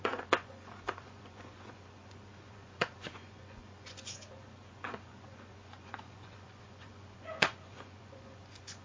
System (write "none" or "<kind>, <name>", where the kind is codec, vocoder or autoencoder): vocoder, Vocos